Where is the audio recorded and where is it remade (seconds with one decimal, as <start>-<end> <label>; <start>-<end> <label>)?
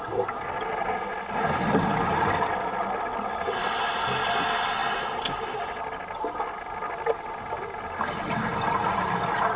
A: 0.0-9.6 recorded